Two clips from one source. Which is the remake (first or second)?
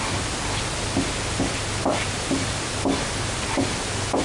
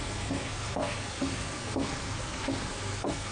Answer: second